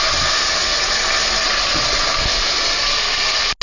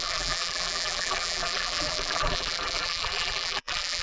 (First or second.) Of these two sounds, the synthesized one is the second